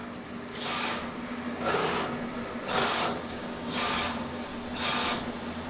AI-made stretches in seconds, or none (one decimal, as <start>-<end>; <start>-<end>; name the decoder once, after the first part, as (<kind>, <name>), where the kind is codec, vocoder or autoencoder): 0.9-1.8 (codec, DAC); 3.3-4.5